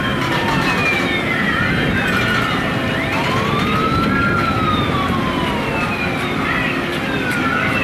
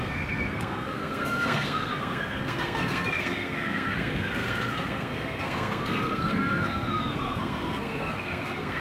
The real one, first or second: first